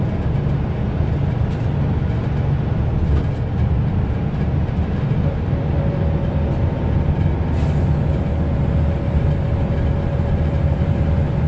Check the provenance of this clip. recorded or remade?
recorded